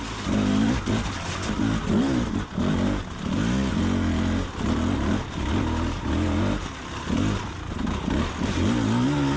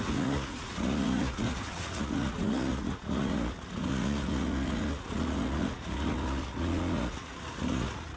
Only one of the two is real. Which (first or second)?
first